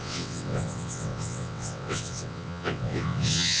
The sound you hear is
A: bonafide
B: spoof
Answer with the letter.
B